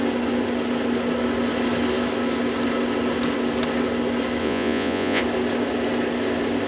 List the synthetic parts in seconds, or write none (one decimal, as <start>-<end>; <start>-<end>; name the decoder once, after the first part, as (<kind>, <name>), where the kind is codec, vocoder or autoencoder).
4.4-5.2 (vocoder, Vocos)

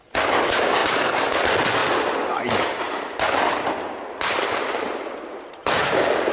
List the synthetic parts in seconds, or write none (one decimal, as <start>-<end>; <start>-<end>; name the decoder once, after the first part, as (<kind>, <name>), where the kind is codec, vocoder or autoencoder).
0.8-1.4 (vocoder, BigVGAN v2); 5.6-6.3

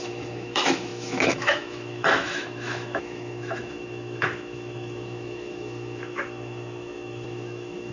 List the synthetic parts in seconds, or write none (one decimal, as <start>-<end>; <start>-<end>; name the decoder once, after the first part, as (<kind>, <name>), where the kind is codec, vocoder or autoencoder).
0.0-7.9 (autoencoder, DAC-VAE)

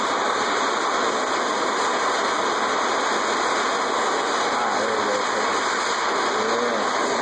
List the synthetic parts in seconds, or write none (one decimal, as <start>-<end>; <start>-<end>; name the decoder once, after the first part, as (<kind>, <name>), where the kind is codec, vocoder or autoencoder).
none

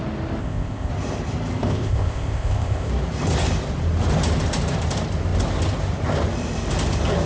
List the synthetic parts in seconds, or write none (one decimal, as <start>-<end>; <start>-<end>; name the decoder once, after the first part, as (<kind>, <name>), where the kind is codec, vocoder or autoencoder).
0.4-0.9 (codec, ZipCodec); 1.6-2.9

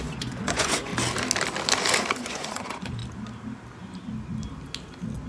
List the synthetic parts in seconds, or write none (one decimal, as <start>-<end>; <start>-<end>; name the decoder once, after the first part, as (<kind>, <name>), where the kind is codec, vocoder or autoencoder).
0.0-0.9 (vocoder, Vocos); 2.1-3.0